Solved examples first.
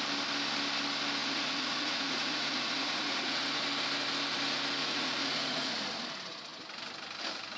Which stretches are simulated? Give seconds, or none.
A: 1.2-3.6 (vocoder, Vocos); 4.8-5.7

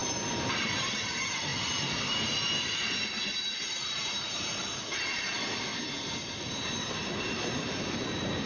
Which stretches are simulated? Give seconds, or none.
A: 0.0-1.5 (vocoder, BigVGAN v2); 3.4-5.7; 6.4-8.5

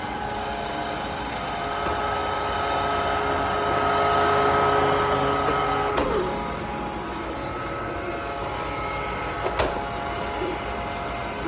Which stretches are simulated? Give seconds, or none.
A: none

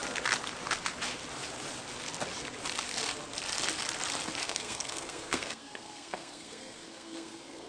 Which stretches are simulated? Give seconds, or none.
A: 4.4-7.7 (codec, SNAC)

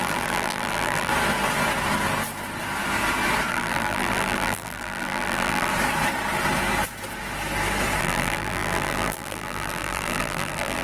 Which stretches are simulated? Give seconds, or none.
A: 0.0-1.1 (vocoder, BigVGAN v2); 3.5-5.7; 8.0-10.8